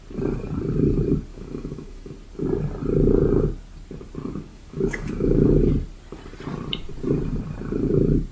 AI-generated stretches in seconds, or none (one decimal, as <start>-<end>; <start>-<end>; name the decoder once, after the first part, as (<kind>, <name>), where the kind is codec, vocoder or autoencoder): 1.3-2.1 (autoencoder, DAC-VAE); 4.5-5.7